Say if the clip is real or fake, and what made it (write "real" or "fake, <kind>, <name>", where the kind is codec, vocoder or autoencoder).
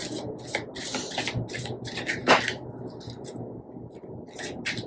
real